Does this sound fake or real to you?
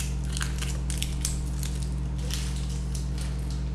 real